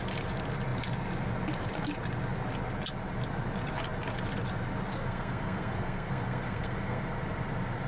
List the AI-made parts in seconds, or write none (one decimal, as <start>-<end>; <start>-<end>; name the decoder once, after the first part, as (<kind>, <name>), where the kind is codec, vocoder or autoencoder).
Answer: 4.9-7.0 (codec, SNAC)